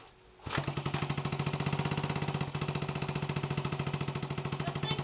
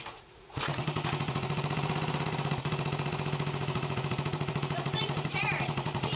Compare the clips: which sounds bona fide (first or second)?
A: first